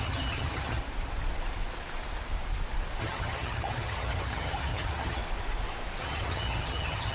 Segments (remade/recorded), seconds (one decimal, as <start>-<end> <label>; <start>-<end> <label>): 0.0-0.8 remade; 0.8-3.0 recorded; 3.0-5.2 remade; 5.2-6.0 recorded; 6.0-7.1 remade